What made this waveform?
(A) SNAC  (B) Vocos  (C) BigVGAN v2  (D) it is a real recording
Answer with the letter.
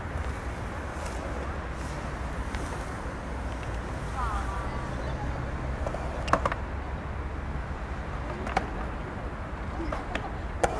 D